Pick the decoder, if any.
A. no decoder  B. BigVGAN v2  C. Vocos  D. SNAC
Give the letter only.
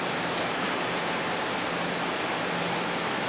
A